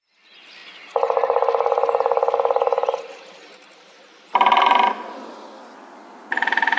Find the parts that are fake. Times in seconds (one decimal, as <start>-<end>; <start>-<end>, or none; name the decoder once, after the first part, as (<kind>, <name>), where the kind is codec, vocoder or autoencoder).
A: none